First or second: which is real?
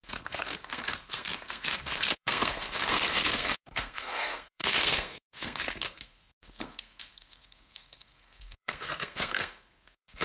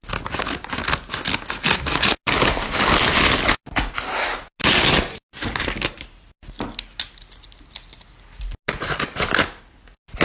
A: second